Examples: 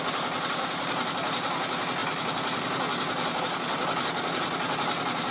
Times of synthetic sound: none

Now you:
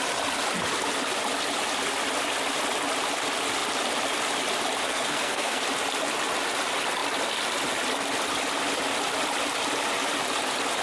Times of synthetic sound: 4.9-5.6

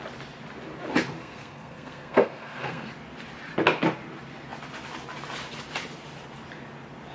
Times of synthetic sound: 1.2-2.9